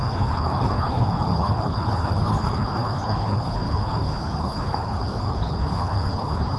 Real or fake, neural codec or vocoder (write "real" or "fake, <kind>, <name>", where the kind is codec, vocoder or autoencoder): fake, codec, HILCodec